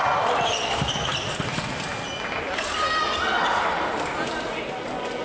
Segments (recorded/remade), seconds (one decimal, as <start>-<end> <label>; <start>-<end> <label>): 0.0-5.2 recorded